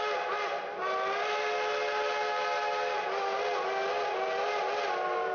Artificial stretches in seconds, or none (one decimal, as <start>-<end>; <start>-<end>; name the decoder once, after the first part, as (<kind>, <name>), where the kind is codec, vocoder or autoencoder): none